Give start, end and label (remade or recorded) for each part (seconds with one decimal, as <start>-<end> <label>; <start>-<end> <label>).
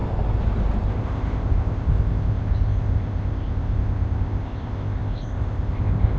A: 0.0-0.9 recorded; 0.9-6.2 remade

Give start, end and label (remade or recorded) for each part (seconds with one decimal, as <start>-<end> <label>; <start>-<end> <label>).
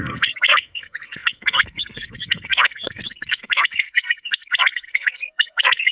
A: 0.0-5.9 remade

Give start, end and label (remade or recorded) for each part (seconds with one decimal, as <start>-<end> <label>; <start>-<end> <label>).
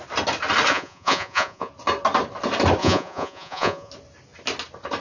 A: 0.0-0.7 recorded; 0.7-1.7 remade; 1.7-2.8 recorded; 2.8-3.9 remade; 3.9-5.0 recorded